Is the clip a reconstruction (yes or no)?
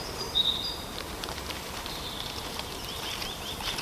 yes